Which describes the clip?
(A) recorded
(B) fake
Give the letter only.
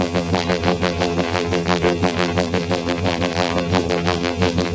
B